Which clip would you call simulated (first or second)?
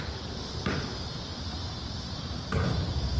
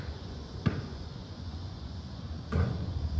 second